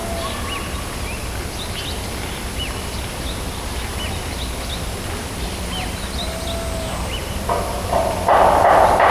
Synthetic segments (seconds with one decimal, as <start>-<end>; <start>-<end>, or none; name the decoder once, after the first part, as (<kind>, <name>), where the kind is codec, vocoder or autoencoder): none